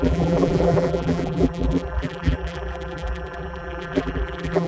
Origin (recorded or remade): remade